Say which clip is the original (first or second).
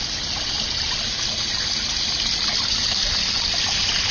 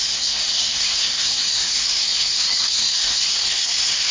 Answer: first